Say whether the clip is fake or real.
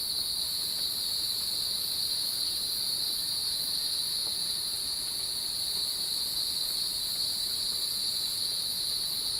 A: real